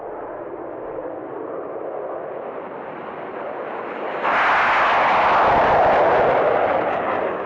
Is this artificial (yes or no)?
no